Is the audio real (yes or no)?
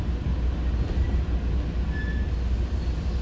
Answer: yes